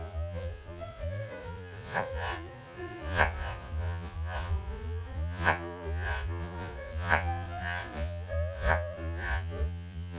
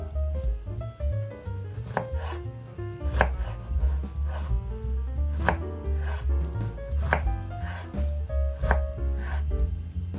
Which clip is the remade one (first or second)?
first